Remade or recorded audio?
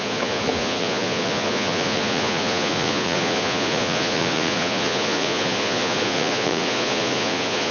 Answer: remade